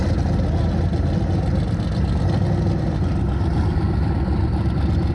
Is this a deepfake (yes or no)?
no